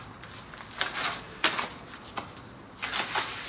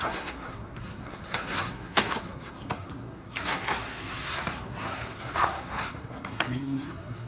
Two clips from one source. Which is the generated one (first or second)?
second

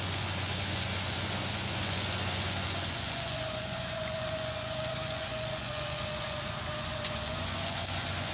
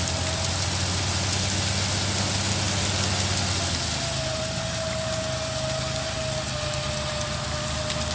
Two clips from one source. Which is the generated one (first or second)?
first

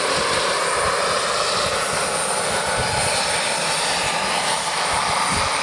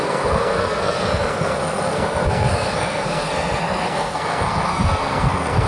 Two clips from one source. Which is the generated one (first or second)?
second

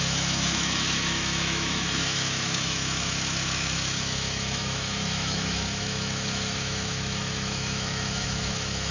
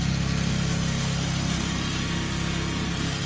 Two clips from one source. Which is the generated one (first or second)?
first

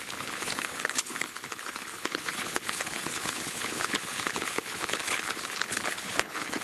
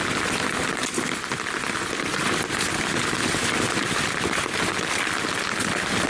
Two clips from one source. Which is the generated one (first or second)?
first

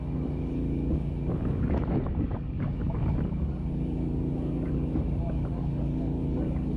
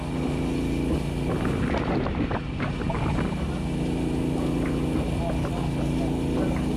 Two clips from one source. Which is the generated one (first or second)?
first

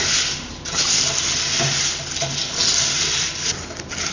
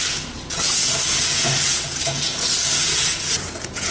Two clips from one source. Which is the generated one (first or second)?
second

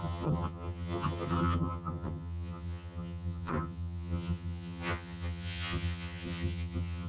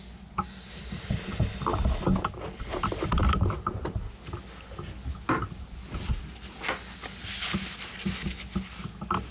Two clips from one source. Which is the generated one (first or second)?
first